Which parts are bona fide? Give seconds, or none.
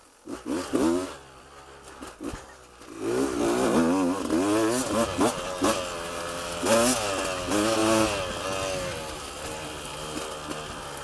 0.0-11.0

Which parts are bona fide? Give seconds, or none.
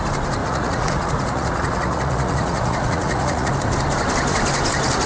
0.0-0.4; 3.5-5.1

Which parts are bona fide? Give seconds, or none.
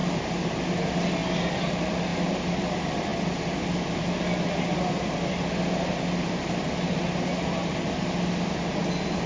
0.5-9.3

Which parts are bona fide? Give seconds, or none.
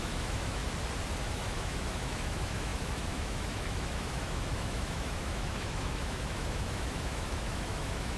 0.6-1.3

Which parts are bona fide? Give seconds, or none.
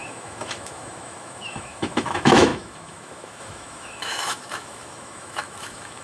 none